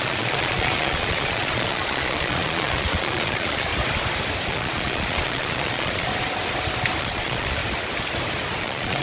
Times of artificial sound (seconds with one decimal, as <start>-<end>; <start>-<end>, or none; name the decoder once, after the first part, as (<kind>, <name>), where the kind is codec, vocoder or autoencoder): 0.0-3.7 (vocoder, Vocos); 4.5-6.1; 7.0-7.6; 8.6-9.0